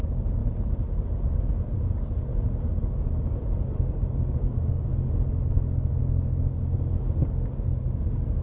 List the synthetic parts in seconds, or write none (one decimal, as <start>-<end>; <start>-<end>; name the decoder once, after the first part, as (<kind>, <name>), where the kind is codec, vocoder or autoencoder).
0.0-0.4 (codec, DAC); 1.1-4.9; 6.0-8.4